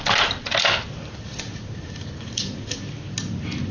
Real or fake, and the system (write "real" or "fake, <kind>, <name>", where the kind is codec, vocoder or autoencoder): real